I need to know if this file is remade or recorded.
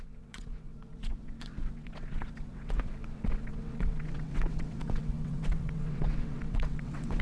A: remade